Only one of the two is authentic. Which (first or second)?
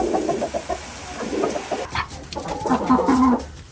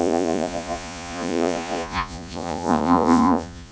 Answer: first